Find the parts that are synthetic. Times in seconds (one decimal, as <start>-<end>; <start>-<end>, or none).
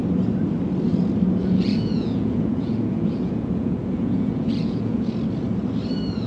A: 1.4-5.1